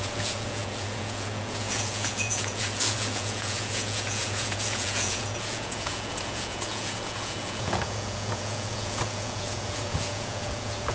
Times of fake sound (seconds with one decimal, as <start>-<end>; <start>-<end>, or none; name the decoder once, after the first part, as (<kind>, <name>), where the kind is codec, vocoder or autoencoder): 0.0-10.9 (vocoder, Vocos)